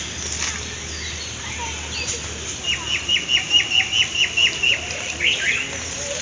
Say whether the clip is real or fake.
real